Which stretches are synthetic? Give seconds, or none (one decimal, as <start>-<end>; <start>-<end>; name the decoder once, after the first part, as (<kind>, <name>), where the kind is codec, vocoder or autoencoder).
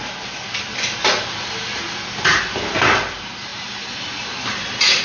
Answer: none